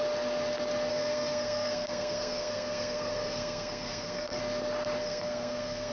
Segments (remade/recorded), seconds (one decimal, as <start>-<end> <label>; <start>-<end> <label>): 0.0-0.9 recorded; 0.9-4.4 remade; 4.4-5.0 recorded; 5.0-5.9 remade